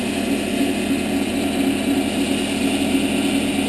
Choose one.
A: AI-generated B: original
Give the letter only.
B